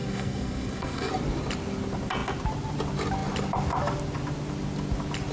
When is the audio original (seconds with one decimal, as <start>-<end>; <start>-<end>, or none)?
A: 1.1-5.3